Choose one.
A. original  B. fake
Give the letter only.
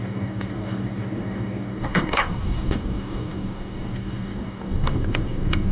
B